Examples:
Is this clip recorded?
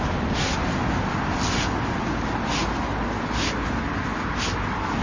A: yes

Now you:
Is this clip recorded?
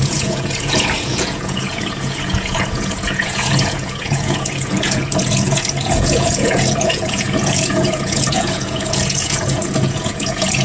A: no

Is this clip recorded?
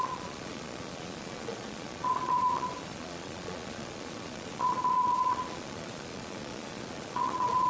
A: no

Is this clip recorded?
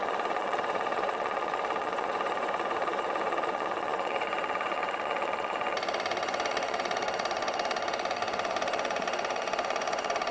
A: no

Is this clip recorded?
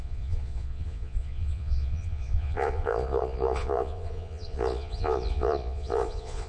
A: no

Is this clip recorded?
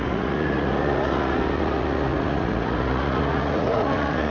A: no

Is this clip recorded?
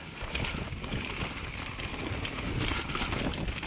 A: yes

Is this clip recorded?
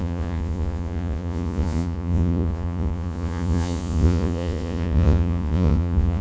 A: no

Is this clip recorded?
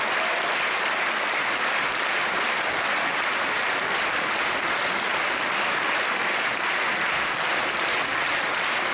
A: yes